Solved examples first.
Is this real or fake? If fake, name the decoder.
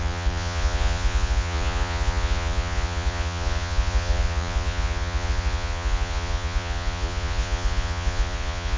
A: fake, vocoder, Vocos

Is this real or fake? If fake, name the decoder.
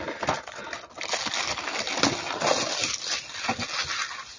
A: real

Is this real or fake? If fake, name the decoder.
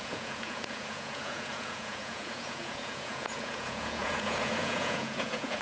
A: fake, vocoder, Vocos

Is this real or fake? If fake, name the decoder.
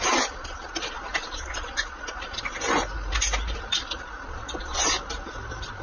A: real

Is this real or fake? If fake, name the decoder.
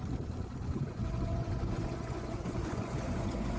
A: fake, vocoder, Vocos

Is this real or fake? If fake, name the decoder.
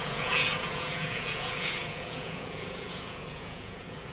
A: fake, vocoder, Vocos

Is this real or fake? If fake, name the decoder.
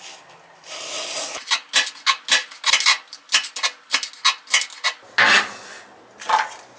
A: real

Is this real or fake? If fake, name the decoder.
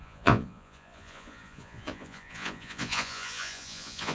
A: fake, vocoder, Vocos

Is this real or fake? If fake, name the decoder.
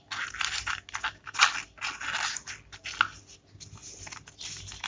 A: real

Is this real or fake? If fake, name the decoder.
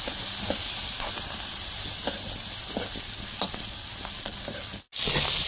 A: real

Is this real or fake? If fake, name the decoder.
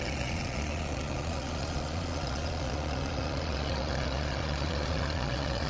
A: fake, vocoder, Vocos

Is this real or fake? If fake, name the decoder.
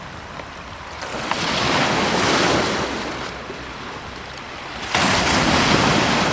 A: real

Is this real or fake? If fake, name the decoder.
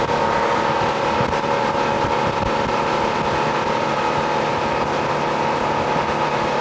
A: real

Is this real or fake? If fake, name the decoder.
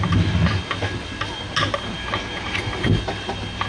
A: real